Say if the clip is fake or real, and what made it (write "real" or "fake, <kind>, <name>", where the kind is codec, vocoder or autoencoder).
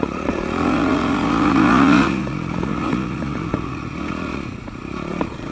fake, vocoder, Vocos